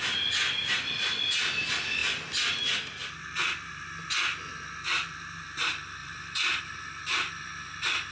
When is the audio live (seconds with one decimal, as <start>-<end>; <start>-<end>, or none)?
0.0-6.0; 6.6-8.1

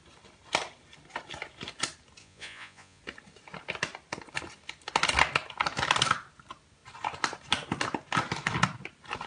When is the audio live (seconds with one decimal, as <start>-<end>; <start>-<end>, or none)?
0.0-2.2; 3.0-9.3

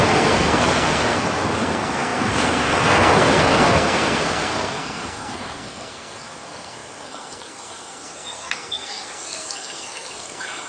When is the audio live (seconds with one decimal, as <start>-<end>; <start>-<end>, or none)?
none

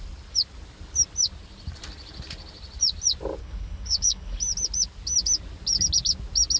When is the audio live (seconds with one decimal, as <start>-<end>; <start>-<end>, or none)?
0.0-3.4; 4.4-6.6

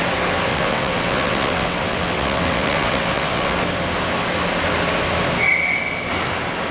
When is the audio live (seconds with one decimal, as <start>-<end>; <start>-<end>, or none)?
0.0-0.5; 3.6-6.7

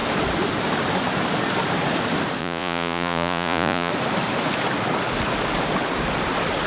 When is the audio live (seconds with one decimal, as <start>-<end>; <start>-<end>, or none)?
0.0-2.4; 3.9-6.7

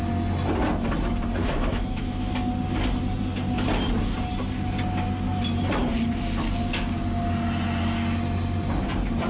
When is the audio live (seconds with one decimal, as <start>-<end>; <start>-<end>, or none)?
0.0-1.4; 2.3-9.3

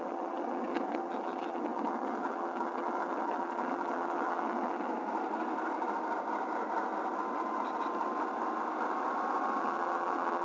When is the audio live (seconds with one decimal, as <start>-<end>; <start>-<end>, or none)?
4.9-9.6